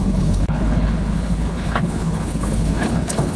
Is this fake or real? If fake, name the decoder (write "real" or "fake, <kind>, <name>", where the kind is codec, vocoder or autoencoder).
fake, codec, HILCodec